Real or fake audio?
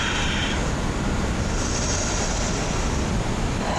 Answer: fake